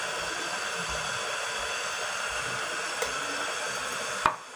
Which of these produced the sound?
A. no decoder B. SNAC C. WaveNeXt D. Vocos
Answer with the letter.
A